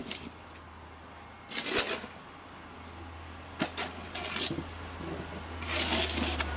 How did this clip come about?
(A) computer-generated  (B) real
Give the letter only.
B